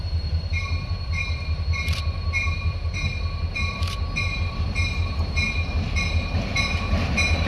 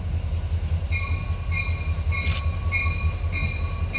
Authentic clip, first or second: second